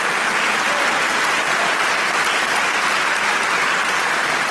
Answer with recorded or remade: recorded